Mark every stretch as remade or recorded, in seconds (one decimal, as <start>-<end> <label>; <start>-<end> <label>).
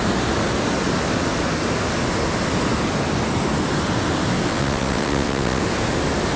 0.0-4.5 recorded; 4.5-5.6 remade; 5.6-6.4 recorded